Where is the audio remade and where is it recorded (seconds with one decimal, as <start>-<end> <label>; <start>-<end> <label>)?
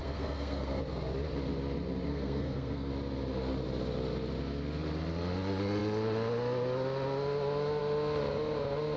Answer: 0.0-0.8 remade; 0.8-2.1 recorded; 2.1-2.9 remade; 2.9-9.0 recorded